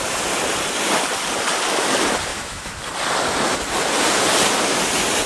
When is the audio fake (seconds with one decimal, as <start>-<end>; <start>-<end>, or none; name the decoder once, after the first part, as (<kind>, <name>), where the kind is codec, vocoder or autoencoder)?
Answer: 2.3-2.8 (autoencoder, DAC-VAE)